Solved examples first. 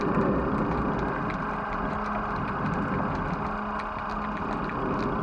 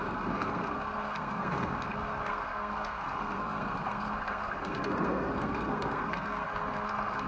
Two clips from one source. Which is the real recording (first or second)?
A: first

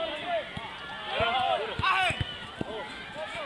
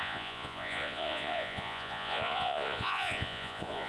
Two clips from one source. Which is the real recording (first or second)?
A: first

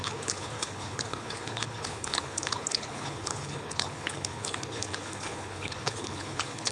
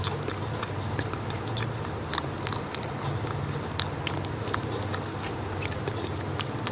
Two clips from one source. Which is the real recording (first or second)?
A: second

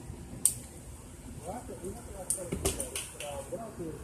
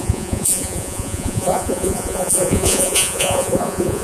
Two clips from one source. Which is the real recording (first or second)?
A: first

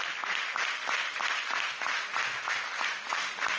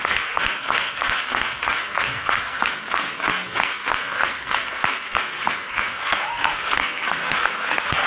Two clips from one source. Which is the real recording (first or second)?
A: first